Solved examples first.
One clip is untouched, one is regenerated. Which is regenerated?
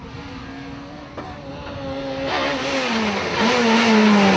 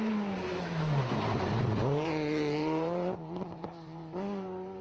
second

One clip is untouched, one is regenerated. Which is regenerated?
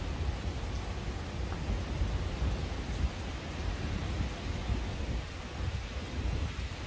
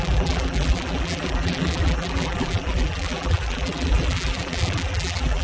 second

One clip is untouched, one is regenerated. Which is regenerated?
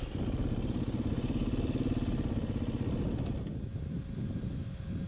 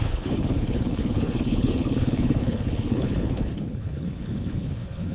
second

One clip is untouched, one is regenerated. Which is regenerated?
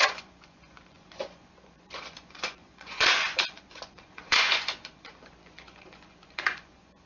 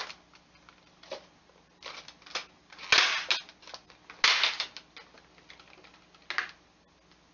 first